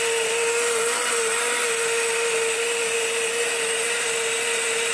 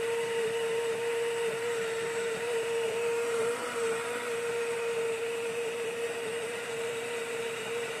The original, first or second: first